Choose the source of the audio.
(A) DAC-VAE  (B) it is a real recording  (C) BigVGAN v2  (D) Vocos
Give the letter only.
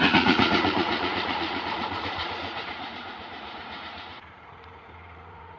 D